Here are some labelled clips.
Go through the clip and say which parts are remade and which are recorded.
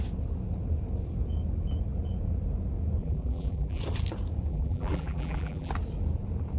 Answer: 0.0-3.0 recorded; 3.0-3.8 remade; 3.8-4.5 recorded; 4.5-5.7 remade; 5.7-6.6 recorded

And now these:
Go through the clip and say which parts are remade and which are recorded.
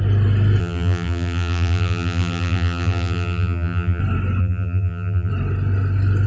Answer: 0.0-0.6 recorded; 0.6-4.0 remade; 4.0-4.4 recorded; 4.4-5.3 remade; 5.3-6.3 recorded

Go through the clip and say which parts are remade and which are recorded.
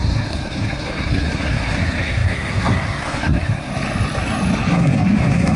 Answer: 0.0-3.7 remade; 3.7-4.7 recorded; 4.7-5.6 remade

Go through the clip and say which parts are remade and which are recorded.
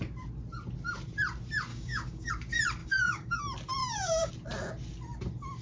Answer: 0.0-1.7 recorded; 1.7-2.3 remade; 2.3-2.8 recorded; 2.8-3.4 remade; 3.4-3.8 recorded; 3.8-4.3 remade; 4.3-5.6 recorded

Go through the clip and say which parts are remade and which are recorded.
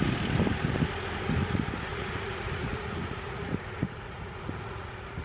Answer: 0.0-1.9 recorded; 1.9-5.2 remade